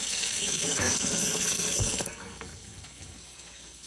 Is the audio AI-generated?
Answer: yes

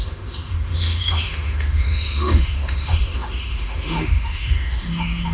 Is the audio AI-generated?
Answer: yes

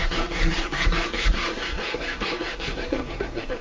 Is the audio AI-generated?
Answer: yes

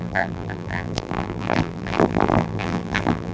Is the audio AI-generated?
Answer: yes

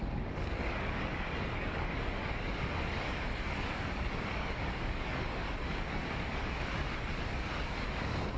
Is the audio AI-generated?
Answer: yes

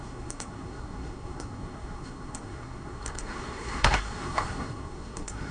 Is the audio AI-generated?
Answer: yes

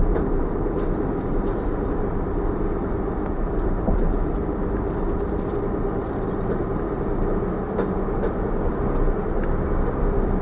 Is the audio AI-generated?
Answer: no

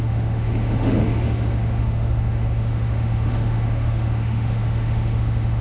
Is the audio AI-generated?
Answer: yes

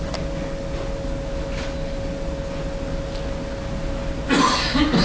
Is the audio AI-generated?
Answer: no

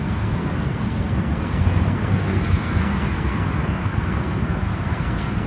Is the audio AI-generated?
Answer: yes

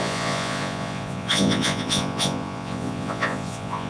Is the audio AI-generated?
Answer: yes